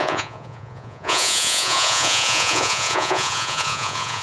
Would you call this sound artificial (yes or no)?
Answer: yes